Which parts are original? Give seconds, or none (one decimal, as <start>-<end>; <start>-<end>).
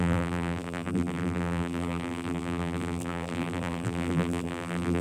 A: none